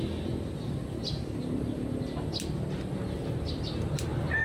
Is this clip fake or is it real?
real